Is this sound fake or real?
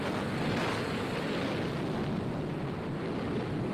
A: real